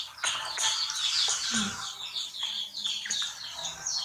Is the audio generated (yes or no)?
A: no